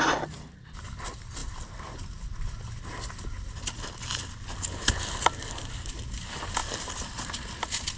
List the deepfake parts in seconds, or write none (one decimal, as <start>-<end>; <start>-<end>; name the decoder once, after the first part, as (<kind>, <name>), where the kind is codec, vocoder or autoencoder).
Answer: 6.6-7.2 (vocoder, BigVGAN v2)